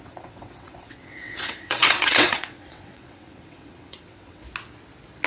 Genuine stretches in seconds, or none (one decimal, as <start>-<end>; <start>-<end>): 4.4-5.3